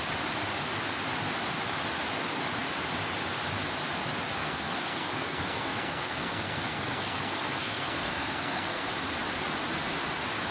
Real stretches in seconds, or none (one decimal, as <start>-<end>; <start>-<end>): 0.0-4.4; 8.9-10.5